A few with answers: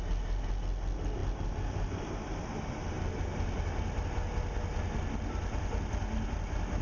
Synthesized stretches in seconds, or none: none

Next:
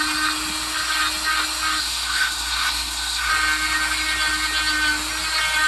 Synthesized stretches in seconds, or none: 1.8-3.3 (codec, SNAC)